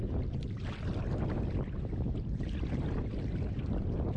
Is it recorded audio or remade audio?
recorded